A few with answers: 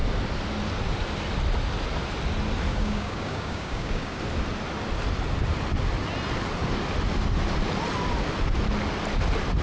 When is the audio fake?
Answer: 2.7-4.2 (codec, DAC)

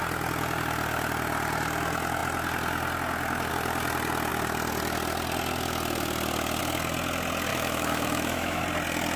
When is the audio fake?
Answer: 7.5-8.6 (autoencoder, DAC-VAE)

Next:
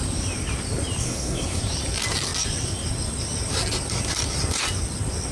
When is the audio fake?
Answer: 1.0-1.6 (codec, SNAC)

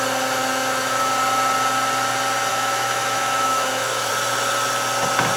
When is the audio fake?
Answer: 0.4-1.1 (autoencoder, DAC-VAE); 2.5-4.1

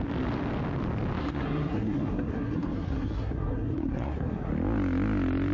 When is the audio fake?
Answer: 1.2-4.5 (codec, SNAC)